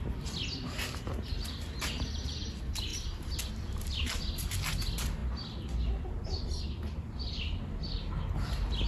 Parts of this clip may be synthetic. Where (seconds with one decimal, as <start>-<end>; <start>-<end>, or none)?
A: none